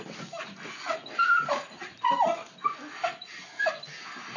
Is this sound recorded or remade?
recorded